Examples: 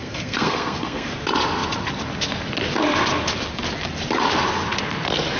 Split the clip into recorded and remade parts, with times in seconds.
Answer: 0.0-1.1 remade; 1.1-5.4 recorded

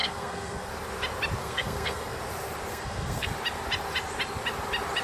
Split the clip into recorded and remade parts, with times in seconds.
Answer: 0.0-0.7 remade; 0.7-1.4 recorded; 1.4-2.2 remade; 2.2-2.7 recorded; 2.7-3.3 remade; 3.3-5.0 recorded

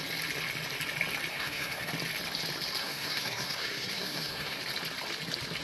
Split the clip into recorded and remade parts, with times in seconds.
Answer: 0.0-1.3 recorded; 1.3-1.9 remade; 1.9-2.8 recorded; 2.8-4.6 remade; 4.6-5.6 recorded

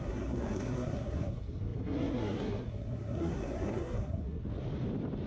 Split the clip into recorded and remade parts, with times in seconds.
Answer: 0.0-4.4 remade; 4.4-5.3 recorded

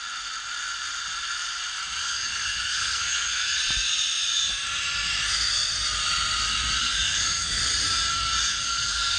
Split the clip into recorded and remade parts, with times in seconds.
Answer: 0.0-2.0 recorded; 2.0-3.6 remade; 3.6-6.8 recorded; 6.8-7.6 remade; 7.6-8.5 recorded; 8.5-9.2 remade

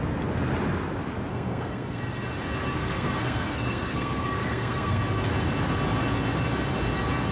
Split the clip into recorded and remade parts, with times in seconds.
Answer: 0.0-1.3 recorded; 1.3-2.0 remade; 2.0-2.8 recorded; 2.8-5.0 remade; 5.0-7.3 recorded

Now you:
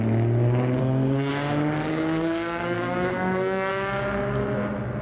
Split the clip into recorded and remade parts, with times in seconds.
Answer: 0.0-0.8 recorded; 0.8-1.3 remade; 1.3-1.9 recorded; 1.9-3.7 remade; 3.7-5.0 recorded

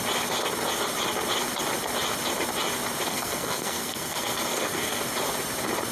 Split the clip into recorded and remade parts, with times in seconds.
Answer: 0.0-3.1 recorded; 3.1-5.0 remade; 5.0-5.9 recorded